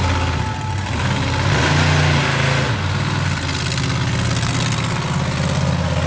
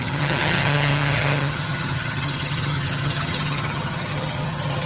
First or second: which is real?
first